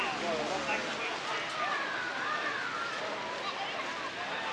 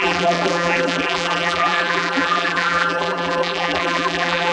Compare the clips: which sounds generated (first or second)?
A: second